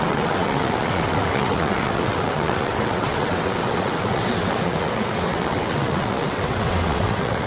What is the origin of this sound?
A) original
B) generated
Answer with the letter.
B